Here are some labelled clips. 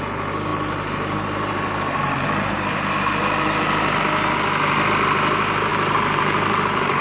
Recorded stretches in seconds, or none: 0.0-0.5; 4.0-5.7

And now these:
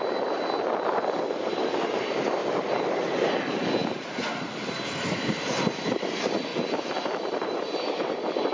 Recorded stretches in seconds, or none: 0.0-2.4; 3.3-8.5

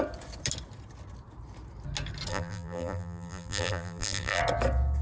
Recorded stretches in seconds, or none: 0.0-2.3; 4.4-5.0

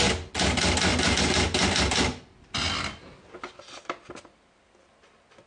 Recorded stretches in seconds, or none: 0.0-5.5